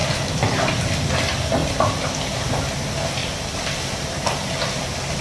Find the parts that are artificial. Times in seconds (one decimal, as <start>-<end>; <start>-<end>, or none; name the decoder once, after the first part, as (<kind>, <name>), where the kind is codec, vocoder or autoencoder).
0.0-0.7 (vocoder, BigVGAN v2); 1.6-2.5; 3.2-4.1